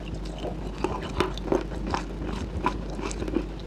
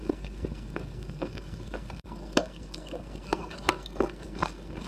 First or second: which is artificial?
second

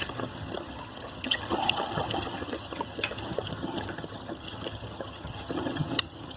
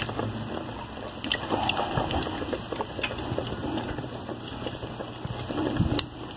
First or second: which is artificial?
first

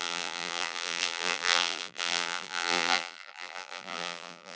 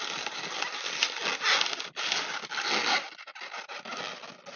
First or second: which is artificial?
first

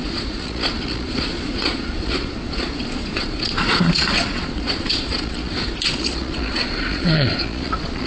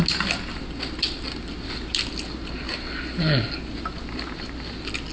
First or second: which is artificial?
first